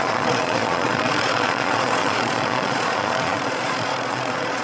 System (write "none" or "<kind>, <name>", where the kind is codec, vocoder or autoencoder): vocoder, Vocos